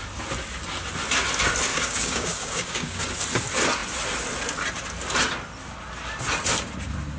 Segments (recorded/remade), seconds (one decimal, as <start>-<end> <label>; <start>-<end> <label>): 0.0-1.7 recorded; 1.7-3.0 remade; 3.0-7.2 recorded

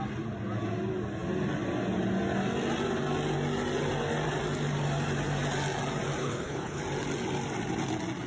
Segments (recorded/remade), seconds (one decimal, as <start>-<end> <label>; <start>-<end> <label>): 0.0-6.2 recorded; 6.2-6.8 remade; 6.8-8.3 recorded

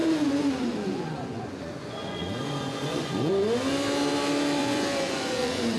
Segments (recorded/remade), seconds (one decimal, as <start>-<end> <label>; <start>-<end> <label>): 0.0-3.3 remade; 3.3-4.6 recorded; 4.6-5.8 remade

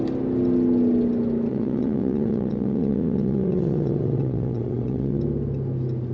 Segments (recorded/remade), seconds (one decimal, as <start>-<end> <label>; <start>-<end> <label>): 0.0-1.5 recorded; 1.5-5.2 remade; 5.2-6.1 recorded